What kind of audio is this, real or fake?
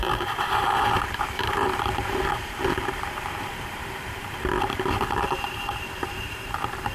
fake